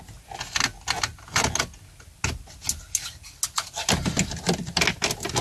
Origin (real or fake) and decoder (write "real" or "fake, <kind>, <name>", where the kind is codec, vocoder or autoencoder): real